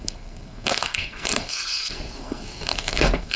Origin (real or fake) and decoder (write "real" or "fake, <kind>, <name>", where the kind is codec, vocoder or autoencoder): fake, codec, SNAC